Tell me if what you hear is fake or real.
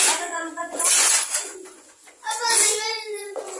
fake